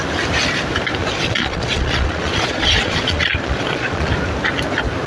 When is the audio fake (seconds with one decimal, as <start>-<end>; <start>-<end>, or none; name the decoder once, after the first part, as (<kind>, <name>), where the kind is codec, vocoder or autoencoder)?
1.0-4.1 (vocoder, Vocos)